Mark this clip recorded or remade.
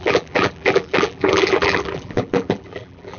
remade